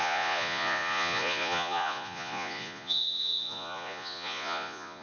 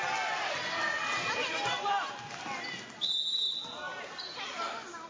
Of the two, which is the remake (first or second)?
first